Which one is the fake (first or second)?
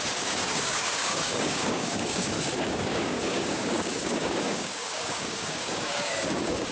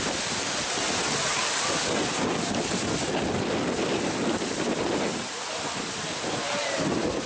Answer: first